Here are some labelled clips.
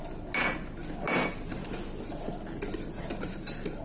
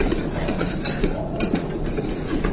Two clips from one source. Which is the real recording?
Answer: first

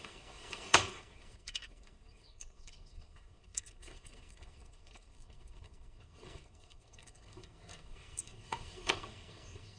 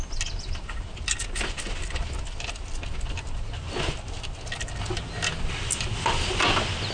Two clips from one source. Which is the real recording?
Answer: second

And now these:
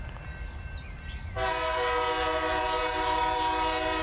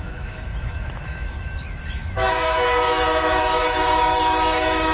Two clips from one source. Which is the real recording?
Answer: first